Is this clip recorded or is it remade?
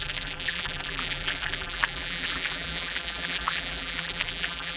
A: remade